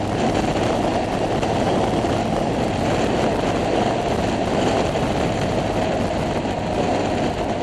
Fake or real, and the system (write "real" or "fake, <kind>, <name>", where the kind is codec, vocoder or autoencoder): real